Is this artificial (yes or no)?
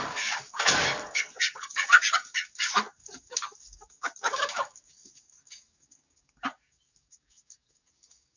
yes